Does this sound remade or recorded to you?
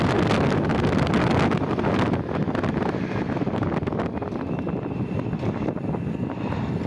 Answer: recorded